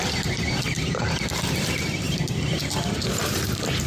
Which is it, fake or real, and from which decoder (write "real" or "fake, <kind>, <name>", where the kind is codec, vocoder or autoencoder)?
fake, vocoder, BigVGAN v2